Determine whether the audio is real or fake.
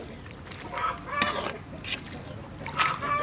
real